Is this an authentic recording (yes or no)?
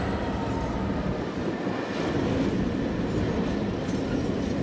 yes